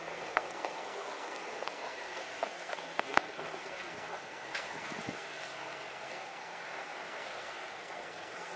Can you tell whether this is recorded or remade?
remade